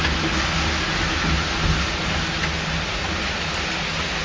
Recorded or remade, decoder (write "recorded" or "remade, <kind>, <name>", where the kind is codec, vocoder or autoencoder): recorded